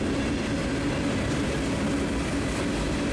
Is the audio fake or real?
real